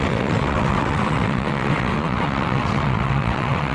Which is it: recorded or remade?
remade